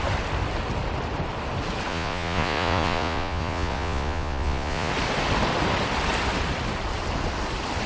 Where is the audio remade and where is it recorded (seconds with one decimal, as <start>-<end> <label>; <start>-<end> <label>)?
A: 0.0-1.9 recorded; 1.9-4.9 remade; 4.9-7.9 recorded